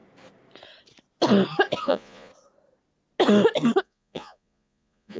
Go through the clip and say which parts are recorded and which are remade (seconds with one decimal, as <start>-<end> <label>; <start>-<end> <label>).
0.0-1.8 recorded; 1.8-2.3 remade; 2.3-3.8 recorded; 3.8-5.2 remade